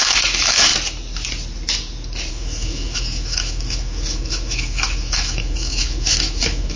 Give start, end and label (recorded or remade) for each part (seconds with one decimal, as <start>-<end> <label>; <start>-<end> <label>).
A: 0.0-0.7 remade; 0.7-2.3 recorded; 2.3-6.8 remade